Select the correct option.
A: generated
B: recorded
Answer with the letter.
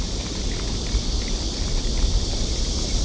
B